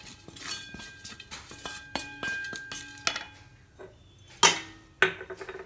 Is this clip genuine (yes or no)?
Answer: yes